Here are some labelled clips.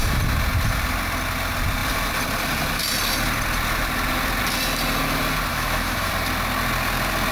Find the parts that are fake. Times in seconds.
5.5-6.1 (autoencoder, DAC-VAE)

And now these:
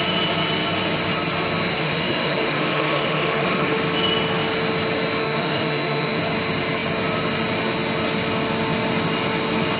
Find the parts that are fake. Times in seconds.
1.8-3.8 (autoencoder, DAC-VAE); 5.2-6.2

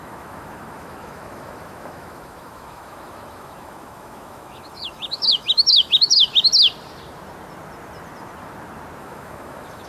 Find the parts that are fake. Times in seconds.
0.0-6.3 (autoencoder, DAC-VAE); 9.0-9.9

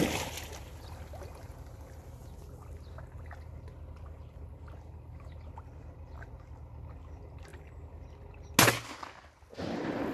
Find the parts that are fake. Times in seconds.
none

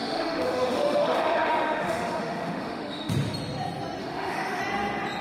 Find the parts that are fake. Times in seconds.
0.0-3.1 (autoencoder, DAC-VAE); 4.0-4.6

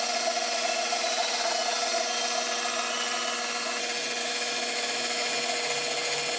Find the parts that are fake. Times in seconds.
4.2-5.3 (autoencoder, DAC-VAE)

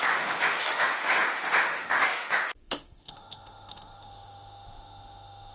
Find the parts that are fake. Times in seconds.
0.0-5.5 (autoencoder, DAC-VAE)

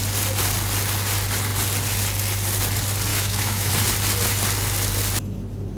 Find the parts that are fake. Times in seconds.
3.1-3.7 (autoencoder, DAC-VAE)